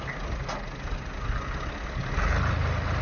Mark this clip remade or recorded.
recorded